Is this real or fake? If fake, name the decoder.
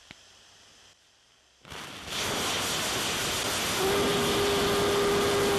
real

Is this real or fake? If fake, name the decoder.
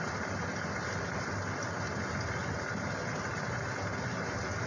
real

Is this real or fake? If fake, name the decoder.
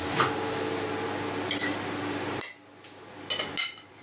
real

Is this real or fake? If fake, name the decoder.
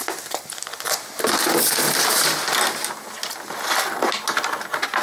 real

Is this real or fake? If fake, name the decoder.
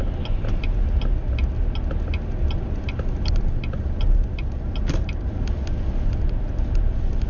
real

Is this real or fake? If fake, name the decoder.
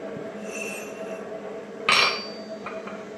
real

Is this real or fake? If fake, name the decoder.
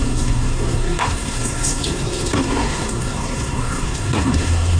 fake, codec, SNAC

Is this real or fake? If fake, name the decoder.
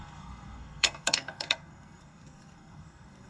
fake, codec, SNAC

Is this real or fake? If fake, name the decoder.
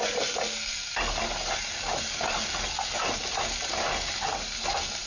real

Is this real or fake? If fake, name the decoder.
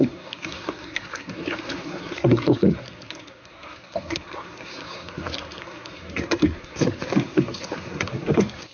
fake, codec, SNAC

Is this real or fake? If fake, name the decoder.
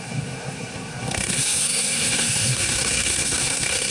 fake, codec, SNAC